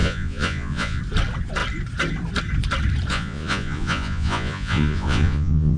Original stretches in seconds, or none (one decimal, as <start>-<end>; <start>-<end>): 1.0-3.1

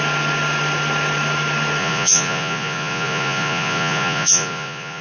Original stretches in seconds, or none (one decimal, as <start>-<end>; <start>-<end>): 0.0-1.8

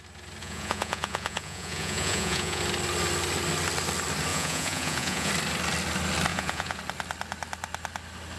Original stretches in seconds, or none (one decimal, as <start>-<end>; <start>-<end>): 0.0-0.4; 2.6-4.3; 5.3-6.3; 6.8-8.4

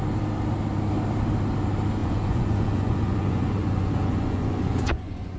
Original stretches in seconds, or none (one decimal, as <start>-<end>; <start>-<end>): 0.0-2.0

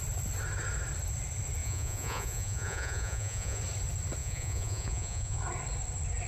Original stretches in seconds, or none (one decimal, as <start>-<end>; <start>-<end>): 0.0-1.6; 3.6-4.2; 5.4-6.3